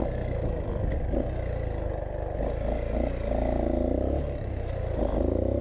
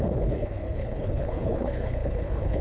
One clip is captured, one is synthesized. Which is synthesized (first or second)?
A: second